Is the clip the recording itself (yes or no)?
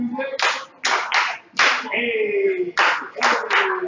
yes